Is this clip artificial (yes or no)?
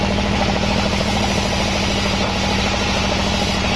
no